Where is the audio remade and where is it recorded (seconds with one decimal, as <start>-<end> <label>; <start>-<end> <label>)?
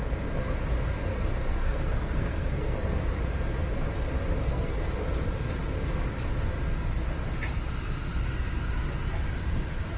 0.0-1.1 recorded; 1.1-3.0 remade; 3.0-4.4 recorded; 4.4-4.9 remade; 4.9-10.0 recorded